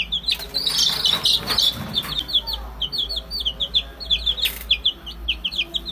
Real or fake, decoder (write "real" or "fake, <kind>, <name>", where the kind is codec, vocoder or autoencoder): real